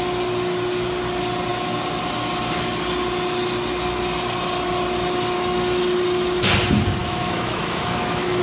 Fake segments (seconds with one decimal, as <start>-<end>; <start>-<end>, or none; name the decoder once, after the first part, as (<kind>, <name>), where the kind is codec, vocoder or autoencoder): 7.0-8.4 (autoencoder, DAC-VAE)